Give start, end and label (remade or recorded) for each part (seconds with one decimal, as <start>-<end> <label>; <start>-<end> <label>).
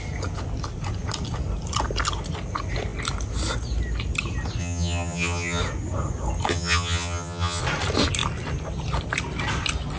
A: 0.0-4.6 recorded; 4.6-5.6 remade; 5.6-6.5 recorded; 6.5-7.6 remade; 7.6-10.0 recorded